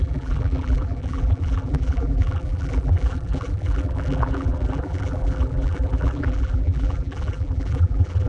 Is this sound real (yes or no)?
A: no